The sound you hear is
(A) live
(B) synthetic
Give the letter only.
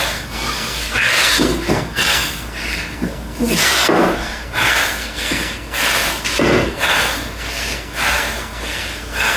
B